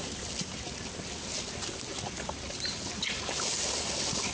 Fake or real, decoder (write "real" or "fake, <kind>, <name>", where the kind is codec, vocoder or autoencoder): real